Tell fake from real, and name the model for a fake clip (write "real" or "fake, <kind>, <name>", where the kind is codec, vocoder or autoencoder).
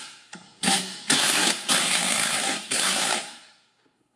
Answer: fake, codec, SNAC